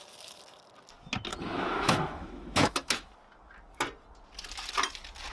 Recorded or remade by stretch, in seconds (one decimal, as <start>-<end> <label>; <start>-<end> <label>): 0.0-1.3 recorded; 1.3-3.1 remade; 3.1-5.3 recorded